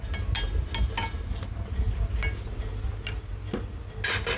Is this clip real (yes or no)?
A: yes